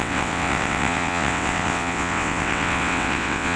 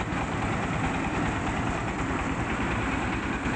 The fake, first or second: first